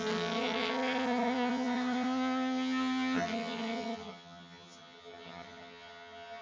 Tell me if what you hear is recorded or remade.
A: remade